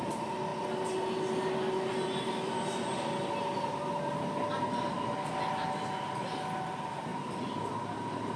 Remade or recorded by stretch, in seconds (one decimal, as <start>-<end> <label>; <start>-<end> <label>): 0.0-8.4 recorded